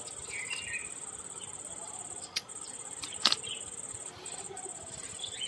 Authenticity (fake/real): real